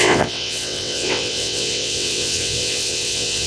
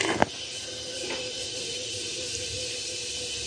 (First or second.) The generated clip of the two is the first